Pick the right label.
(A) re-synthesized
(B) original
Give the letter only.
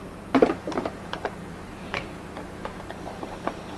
A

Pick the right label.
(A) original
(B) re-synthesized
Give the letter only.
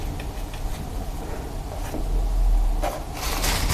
A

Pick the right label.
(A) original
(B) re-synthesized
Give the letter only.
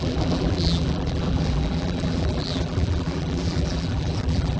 B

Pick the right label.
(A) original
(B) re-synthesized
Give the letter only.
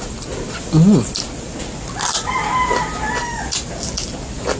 A